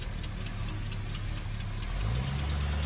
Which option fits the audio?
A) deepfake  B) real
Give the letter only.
B